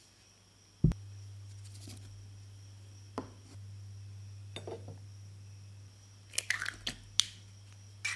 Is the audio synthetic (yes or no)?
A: no